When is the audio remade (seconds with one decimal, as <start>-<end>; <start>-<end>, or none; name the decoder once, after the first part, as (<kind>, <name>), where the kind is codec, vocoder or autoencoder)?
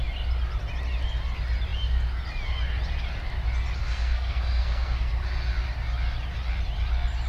3.8-5.1 (codec, SNAC)